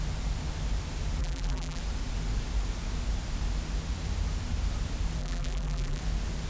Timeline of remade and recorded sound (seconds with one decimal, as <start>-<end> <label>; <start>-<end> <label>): 0.0-1.2 recorded; 1.2-1.8 remade; 1.8-5.2 recorded; 5.2-6.0 remade; 6.0-6.5 recorded